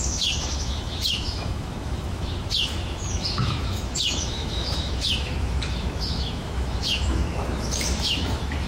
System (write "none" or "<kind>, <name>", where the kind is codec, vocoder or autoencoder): autoencoder, DAC-VAE